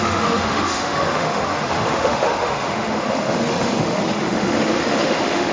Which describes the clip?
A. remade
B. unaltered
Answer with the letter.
A